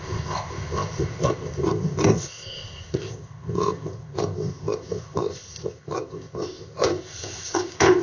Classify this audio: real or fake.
fake